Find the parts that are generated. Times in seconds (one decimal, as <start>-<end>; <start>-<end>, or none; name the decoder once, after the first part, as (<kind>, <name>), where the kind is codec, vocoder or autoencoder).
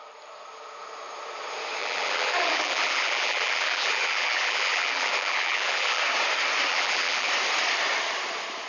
1.8-6.0 (vocoder, BigVGAN v2); 6.7-7.3